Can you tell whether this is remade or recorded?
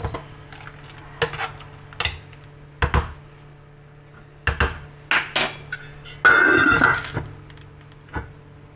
recorded